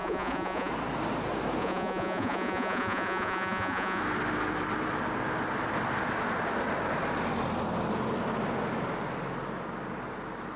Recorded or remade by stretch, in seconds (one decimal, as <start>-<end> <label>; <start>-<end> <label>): 0.0-0.7 remade; 0.7-1.6 recorded; 1.6-4.0 remade; 4.0-10.6 recorded